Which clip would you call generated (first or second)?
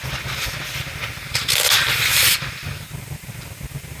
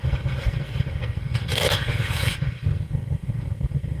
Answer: second